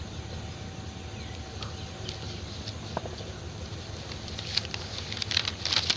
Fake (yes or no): no